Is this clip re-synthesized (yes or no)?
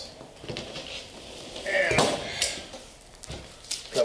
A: no